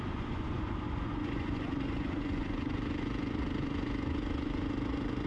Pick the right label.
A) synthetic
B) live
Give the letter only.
A